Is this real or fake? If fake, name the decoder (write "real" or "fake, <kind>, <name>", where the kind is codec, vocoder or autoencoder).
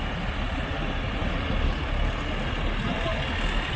real